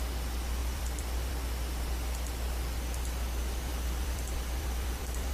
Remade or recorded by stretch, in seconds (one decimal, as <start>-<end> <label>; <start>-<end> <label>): 0.0-0.6 recorded; 0.6-1.3 remade; 1.3-3.7 recorded; 3.7-5.3 remade